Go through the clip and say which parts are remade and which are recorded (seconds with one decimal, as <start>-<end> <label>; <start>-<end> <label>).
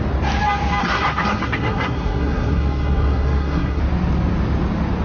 0.0-0.8 recorded; 0.8-3.8 remade; 3.8-5.0 recorded